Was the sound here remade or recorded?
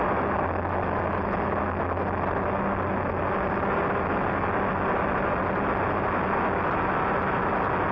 recorded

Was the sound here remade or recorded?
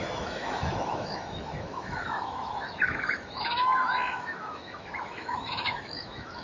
remade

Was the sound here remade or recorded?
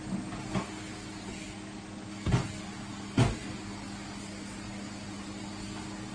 recorded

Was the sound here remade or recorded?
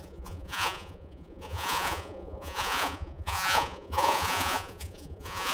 remade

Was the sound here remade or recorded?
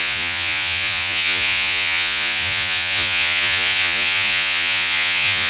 remade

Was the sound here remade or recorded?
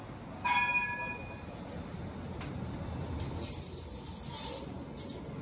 recorded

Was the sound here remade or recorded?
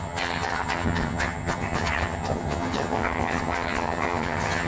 remade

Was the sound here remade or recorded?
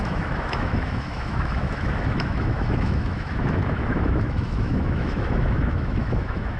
remade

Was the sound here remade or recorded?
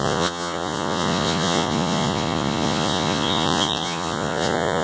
remade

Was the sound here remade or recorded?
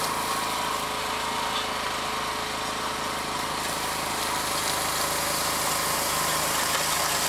recorded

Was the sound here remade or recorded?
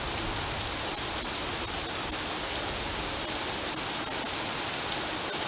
recorded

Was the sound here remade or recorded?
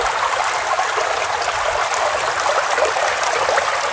recorded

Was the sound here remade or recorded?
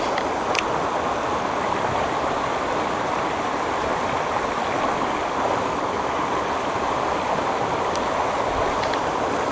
recorded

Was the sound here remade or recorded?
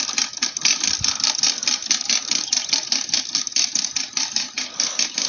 recorded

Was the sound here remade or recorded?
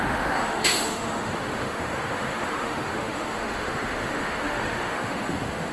remade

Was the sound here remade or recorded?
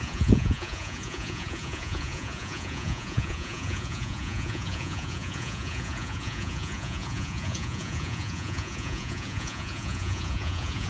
remade